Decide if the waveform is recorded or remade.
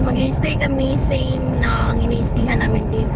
remade